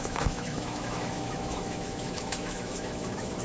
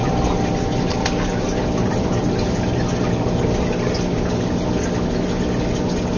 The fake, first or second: first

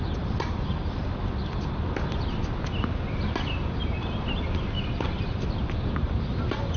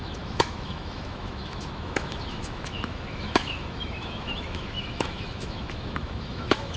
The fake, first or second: second